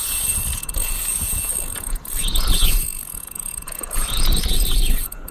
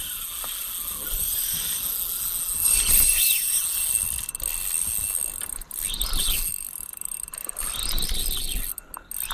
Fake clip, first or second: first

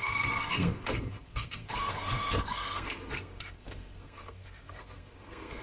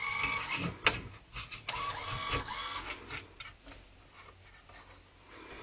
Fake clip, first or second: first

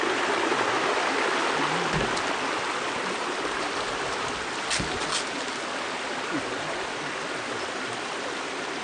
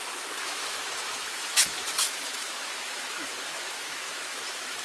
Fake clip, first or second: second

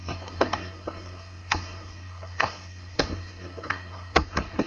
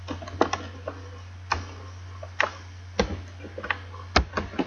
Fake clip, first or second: first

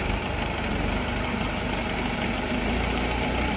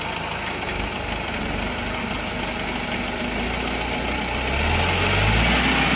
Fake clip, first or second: first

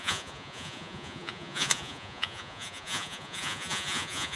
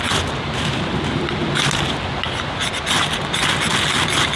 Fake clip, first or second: first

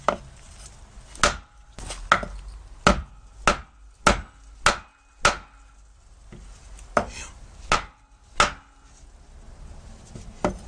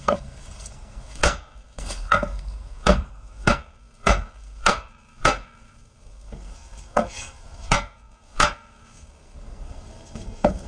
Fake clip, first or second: second